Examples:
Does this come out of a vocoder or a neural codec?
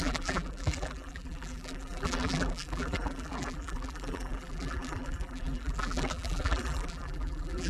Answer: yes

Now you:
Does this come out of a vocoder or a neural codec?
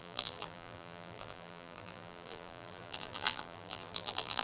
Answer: yes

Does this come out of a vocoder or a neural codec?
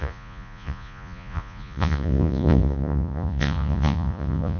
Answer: yes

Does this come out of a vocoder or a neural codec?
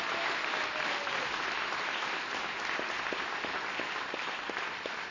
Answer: no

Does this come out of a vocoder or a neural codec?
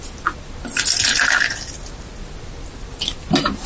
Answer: no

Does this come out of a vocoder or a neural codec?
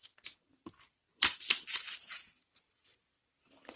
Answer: no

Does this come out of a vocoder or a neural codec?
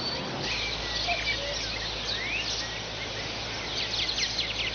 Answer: no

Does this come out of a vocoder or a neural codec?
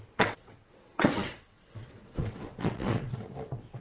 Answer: yes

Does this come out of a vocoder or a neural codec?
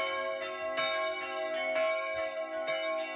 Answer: no